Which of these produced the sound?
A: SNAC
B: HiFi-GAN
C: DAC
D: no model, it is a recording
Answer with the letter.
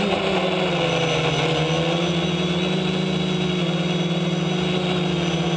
D